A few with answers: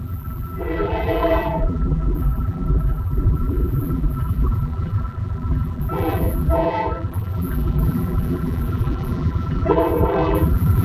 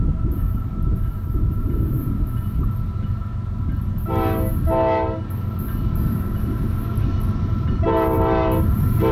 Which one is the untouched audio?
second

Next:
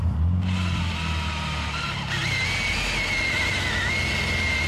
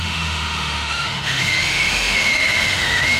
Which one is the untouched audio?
first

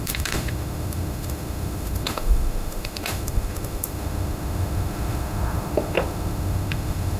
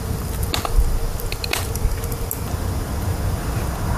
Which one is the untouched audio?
second